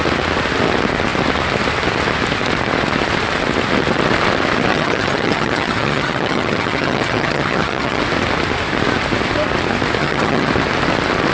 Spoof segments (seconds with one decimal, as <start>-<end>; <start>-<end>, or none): 4.7-8.0; 10.0-10.5